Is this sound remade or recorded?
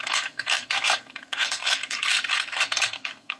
remade